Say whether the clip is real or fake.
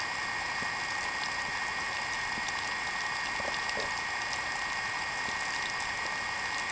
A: real